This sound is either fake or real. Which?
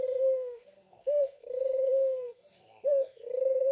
fake